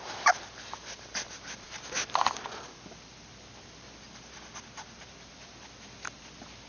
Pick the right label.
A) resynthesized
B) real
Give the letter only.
B